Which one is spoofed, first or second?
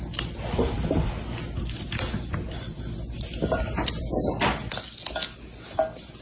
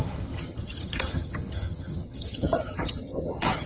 second